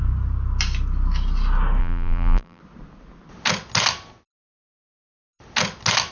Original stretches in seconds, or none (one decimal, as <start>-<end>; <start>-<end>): 0.0-1.8; 2.6-6.1